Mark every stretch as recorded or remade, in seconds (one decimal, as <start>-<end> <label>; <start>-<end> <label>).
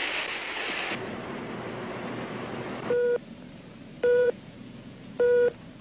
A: 0.0-4.2 recorded; 4.2-5.1 remade; 5.1-5.8 recorded